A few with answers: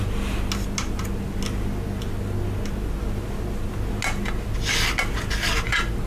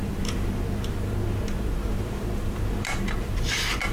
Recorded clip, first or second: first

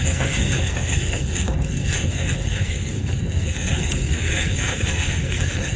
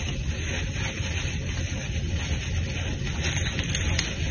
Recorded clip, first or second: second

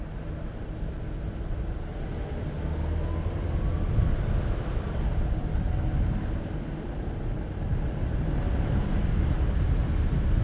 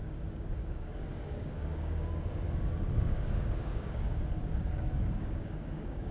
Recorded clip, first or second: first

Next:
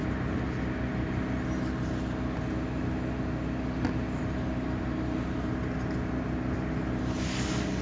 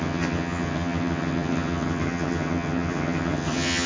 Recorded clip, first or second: first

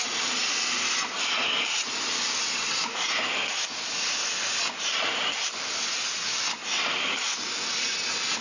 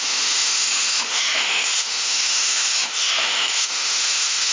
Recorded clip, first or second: first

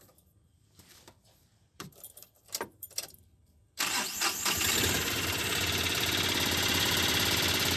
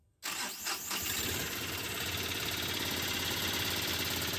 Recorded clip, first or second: second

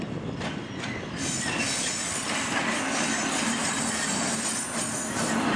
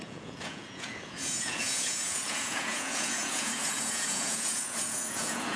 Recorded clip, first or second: first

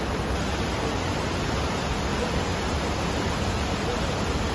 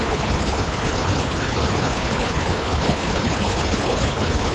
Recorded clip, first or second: first